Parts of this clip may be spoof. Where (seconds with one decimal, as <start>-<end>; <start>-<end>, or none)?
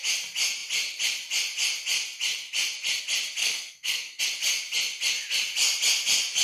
3.4-4.2